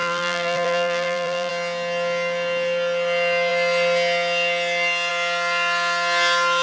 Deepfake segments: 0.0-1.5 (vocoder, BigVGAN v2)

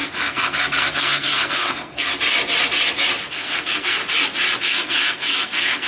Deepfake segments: 0.0-2.1 (codec, SNAC); 3.3-4.0; 4.6-5.9

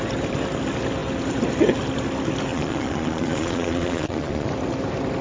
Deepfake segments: 2.5-4.5 (vocoder, Vocos)

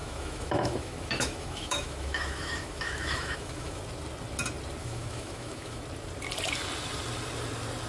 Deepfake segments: 0.0-3.8 (autoencoder, DAC-VAE); 4.8-5.8

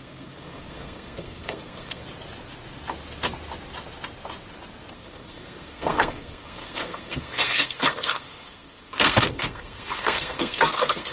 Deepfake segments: 0.0-2.0 (codec, SNAC); 4.9-11.1

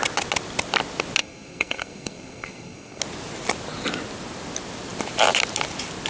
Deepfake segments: 1.2-3.0 (codec, SNAC)

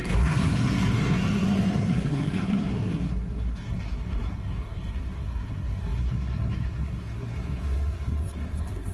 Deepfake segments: 0.0-8.9 (codec, SNAC)

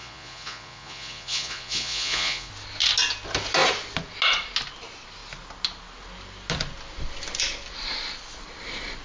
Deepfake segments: 0.0-2.5 (vocoder, Vocos)